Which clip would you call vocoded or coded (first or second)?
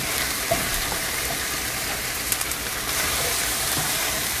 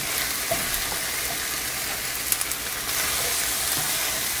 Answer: first